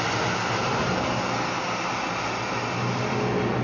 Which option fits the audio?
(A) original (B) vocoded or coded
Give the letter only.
A